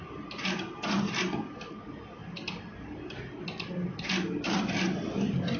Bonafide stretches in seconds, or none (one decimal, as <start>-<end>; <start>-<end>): 0.0-5.6